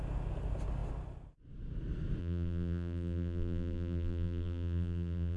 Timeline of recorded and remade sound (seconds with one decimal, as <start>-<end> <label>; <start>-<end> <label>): 0.0-2.2 recorded; 2.2-5.4 remade